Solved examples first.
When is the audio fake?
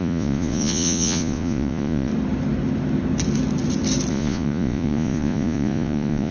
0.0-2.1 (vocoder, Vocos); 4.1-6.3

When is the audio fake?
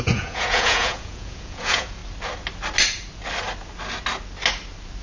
0.0-2.0 (vocoder, Vocos)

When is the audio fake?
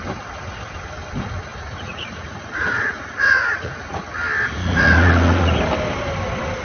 1.5-4.0 (vocoder, Vocos); 4.6-5.5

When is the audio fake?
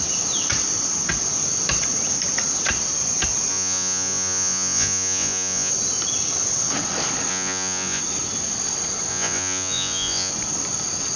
3.5-5.7 (vocoder, Vocos); 7.3-8.0; 9.1-10.3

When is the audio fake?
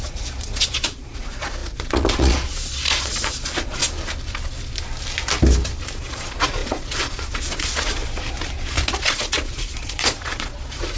0.0-3.8 (vocoder, Vocos); 6.0-8.0; 8.9-11.0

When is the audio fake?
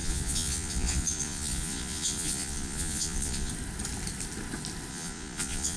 0.0-3.5 (vocoder, Vocos); 4.9-5.8